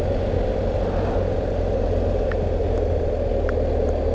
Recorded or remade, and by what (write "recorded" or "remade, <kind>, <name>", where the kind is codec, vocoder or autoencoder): recorded